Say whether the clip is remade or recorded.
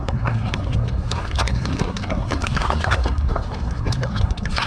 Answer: remade